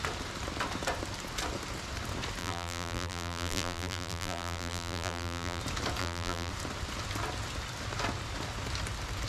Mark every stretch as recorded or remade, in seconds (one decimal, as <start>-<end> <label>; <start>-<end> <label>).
0.0-2.4 recorded; 2.4-5.6 remade; 5.6-6.0 recorded; 6.0-6.5 remade; 6.5-9.3 recorded